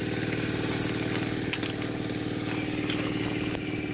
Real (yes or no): yes